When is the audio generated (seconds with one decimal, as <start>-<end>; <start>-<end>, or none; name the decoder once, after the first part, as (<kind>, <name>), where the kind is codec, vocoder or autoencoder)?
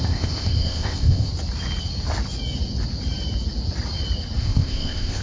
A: 0.0-1.3 (codec, ZipCodec); 4.4-5.2